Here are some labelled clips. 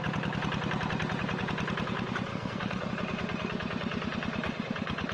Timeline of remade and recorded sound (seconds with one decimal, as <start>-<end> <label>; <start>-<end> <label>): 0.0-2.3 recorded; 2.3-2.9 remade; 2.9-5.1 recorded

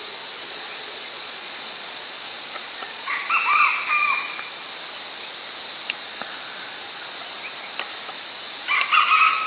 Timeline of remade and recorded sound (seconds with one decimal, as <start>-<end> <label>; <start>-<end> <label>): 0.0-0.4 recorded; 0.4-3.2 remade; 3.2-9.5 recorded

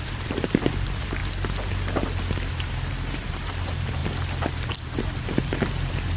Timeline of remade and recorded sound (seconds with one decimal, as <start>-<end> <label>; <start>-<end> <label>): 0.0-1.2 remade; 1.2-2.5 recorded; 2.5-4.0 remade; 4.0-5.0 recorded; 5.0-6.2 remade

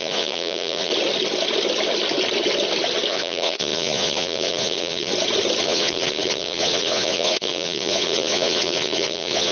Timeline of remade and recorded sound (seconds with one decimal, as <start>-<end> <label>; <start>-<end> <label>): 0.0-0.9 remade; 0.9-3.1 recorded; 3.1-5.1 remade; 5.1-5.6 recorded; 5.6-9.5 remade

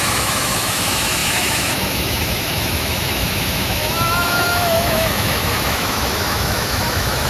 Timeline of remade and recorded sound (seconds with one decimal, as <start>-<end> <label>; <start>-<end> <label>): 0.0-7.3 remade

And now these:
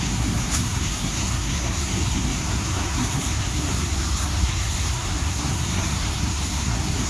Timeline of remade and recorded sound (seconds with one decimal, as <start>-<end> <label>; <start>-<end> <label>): 0.0-7.1 remade